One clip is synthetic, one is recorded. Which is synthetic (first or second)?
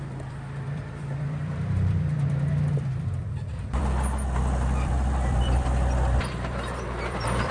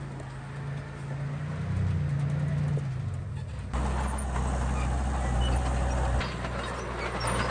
first